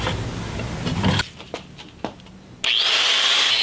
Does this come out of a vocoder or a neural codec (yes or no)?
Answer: no